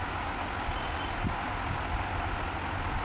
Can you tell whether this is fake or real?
real